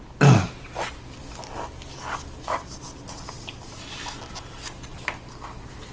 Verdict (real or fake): real